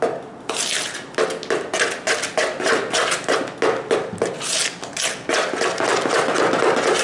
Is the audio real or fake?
real